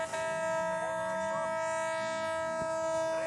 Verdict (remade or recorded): recorded